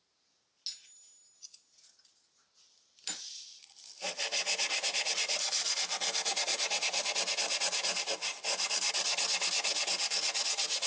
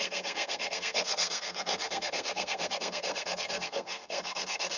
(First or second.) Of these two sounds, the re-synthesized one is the second